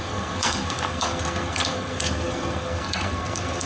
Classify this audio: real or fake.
fake